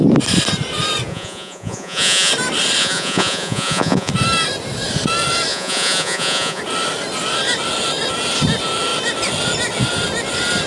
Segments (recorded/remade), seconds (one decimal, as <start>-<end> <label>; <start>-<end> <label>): 0.0-1.1 recorded; 1.1-2.3 remade; 2.3-2.8 recorded; 2.8-4.1 remade; 4.1-5.5 recorded; 5.5-6.6 remade; 6.6-10.7 recorded